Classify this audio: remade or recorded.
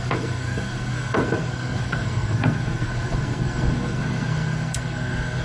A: remade